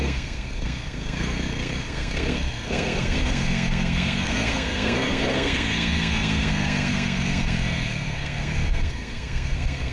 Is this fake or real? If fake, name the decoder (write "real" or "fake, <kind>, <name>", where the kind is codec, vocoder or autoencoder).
fake, codec, SNAC